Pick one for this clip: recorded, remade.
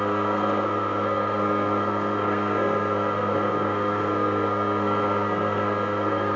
remade